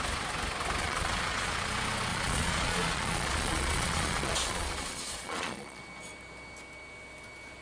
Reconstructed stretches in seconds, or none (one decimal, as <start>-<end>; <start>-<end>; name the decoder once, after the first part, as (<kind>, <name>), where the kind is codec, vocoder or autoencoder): 0.8-1.7 (vocoder, Vocos); 2.1-5.8